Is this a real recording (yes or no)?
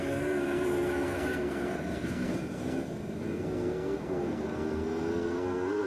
no